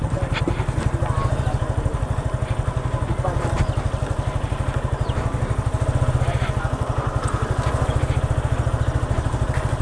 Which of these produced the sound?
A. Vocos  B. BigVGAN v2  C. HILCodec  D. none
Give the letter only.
D